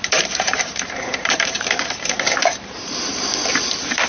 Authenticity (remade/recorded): remade